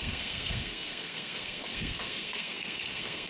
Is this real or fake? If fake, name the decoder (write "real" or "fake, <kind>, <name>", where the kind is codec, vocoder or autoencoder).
fake, codec, SNAC